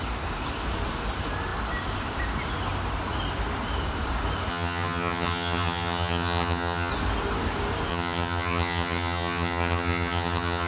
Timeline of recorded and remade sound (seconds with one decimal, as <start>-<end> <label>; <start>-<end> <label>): 0.0-4.5 recorded; 4.5-6.9 remade; 6.9-7.9 recorded; 7.9-10.7 remade